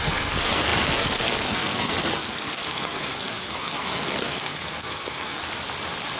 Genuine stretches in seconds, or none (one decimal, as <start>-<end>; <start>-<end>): 5.4-6.2